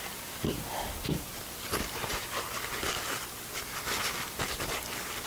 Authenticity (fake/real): real